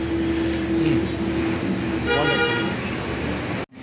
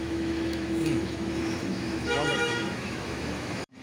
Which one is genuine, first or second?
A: first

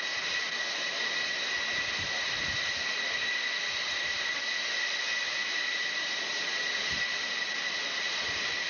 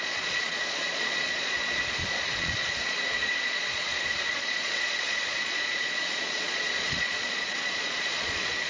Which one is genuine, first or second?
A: first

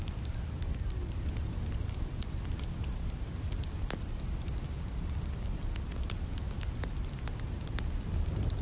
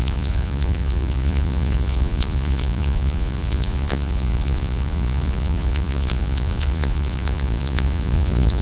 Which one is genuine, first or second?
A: first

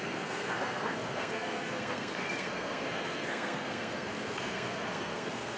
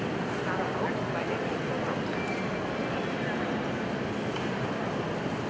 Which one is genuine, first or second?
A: second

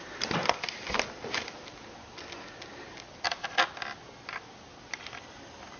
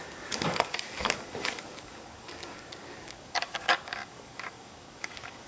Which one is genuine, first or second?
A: first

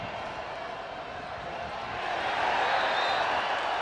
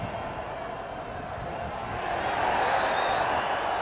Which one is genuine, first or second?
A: second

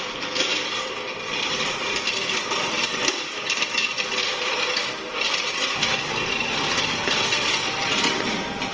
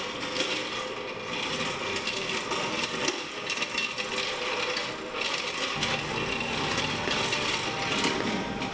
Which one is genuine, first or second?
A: second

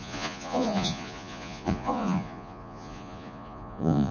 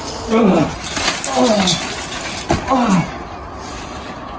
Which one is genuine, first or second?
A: second